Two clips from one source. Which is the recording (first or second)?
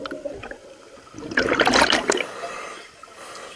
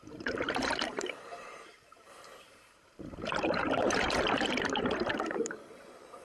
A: first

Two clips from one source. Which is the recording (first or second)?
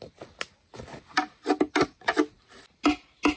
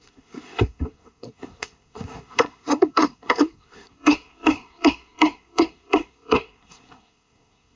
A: first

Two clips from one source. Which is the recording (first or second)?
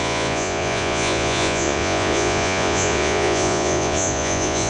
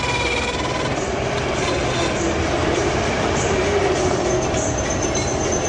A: second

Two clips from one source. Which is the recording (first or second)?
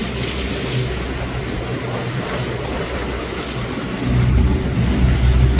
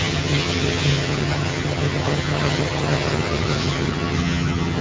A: first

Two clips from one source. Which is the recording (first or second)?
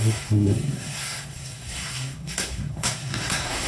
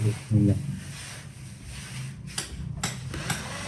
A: second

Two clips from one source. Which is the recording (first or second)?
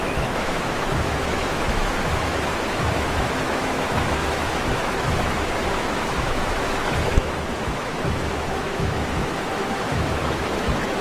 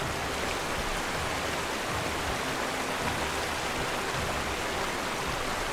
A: second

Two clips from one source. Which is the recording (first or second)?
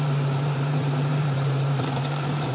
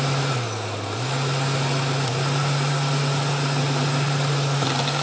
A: second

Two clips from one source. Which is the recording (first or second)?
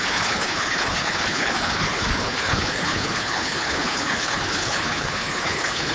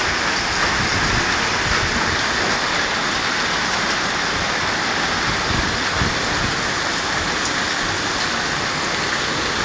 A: second